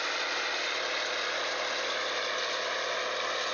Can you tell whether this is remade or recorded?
recorded